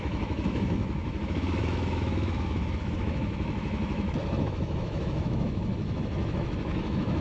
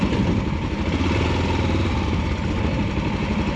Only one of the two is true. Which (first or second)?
second